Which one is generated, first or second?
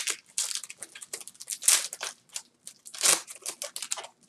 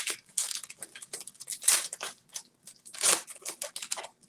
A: second